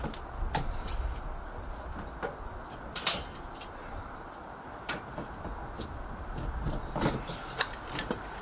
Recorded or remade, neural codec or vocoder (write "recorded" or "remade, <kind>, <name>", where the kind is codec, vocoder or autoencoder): recorded